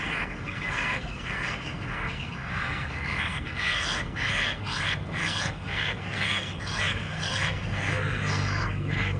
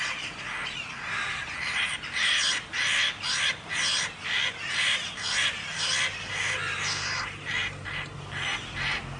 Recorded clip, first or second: second